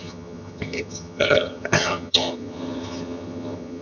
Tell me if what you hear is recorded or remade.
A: remade